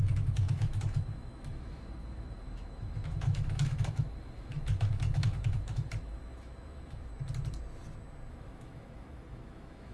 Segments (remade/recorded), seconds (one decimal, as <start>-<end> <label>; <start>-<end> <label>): 0.0-7.1 remade; 7.1-8.3 recorded; 8.3-9.9 remade